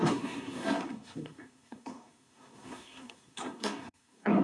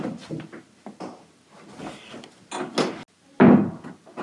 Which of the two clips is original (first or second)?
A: second